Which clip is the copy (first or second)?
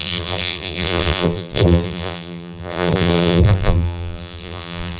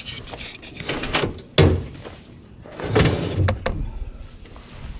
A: first